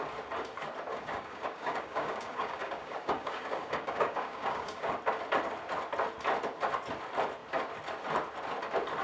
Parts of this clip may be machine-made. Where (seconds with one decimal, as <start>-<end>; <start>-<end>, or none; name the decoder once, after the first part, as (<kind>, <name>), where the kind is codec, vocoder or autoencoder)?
0.9-4.9 (codec, DAC)

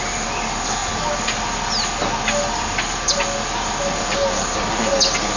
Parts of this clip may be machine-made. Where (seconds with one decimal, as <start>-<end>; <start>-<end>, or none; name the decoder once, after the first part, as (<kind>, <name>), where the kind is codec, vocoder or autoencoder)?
none

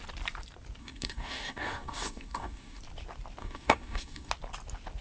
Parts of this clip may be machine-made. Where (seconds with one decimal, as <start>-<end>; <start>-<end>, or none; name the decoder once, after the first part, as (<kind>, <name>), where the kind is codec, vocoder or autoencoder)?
0.8-2.8 (codec, DAC); 3.4-4.3

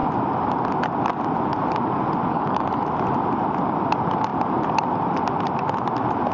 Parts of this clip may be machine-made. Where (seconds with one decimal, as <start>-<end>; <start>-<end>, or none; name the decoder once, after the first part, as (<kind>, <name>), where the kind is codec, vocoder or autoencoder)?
2.3-2.8 (codec, DAC)

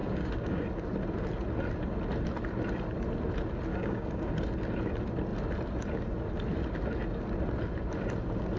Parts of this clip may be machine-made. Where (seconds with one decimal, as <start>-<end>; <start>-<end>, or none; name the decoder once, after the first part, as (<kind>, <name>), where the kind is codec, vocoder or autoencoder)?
0.0-0.6 (codec, DAC); 3.7-4.3

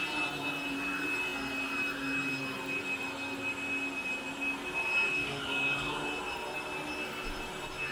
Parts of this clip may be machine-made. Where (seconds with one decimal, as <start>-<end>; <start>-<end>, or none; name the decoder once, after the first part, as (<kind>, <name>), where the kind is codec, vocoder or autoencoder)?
5.1-6.0 (codec, DAC)

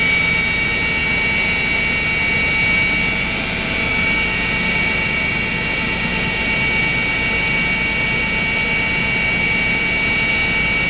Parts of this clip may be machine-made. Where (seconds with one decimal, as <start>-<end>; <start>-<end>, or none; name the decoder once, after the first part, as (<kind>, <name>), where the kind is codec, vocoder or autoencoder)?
none

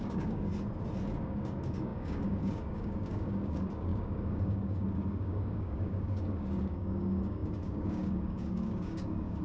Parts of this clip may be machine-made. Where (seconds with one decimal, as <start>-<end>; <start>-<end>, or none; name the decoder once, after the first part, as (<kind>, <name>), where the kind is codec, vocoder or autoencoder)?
0.0-0.5 (codec, DAC); 1.2-9.4